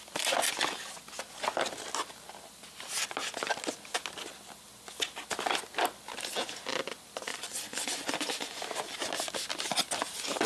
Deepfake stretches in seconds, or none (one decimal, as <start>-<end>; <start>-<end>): 7.3-8.6